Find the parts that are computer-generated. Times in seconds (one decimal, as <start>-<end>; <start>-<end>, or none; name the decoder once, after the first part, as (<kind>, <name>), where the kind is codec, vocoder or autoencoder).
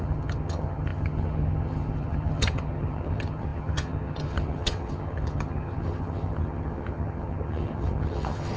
0.0-8.6 (vocoder, HiFi-GAN)